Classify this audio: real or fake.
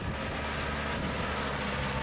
real